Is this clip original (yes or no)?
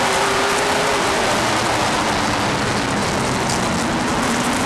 yes